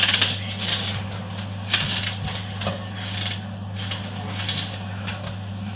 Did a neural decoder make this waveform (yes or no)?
no